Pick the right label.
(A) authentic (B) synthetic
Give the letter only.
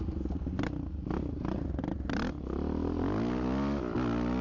A